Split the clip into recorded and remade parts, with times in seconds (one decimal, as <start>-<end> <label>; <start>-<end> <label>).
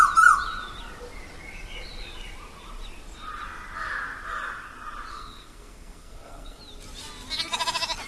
0.0-5.1 recorded; 5.1-6.6 remade; 6.6-8.1 recorded